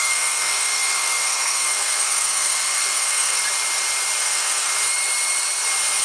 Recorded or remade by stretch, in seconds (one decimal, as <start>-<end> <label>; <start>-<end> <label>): 0.0-3.4 remade; 3.4-4.2 recorded; 4.2-4.7 remade; 4.7-6.0 recorded